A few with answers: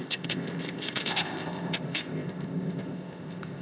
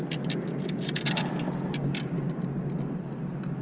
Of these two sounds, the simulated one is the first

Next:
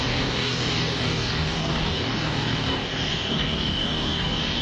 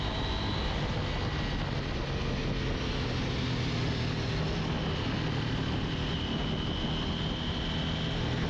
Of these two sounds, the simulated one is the first